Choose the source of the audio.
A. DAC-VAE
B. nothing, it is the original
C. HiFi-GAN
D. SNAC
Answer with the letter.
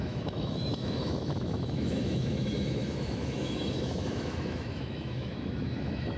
A